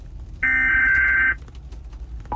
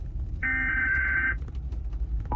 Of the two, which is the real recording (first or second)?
first